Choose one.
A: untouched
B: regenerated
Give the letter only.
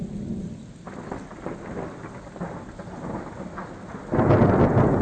A